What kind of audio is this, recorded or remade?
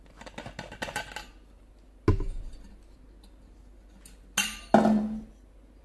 recorded